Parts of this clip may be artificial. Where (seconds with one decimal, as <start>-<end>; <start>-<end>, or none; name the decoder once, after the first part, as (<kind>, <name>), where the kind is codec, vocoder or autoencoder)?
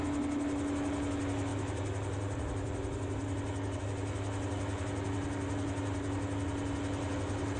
none